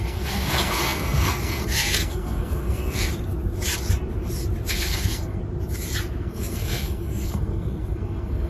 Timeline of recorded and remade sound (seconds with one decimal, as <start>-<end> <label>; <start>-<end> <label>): 0.0-3.1 remade; 3.1-4.7 recorded; 4.7-5.4 remade; 5.4-6.2 recorded; 6.2-8.5 remade